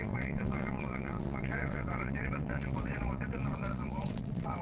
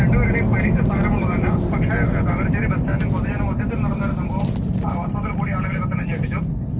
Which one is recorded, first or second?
second